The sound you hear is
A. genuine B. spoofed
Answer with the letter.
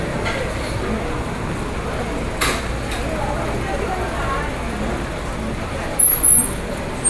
A